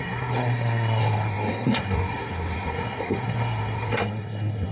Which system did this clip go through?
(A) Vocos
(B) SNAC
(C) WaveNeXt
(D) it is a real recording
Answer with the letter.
B